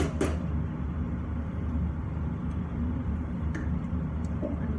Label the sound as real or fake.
real